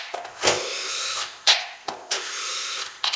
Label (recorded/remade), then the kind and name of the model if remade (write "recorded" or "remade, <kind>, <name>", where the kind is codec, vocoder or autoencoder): remade, codec, ZipCodec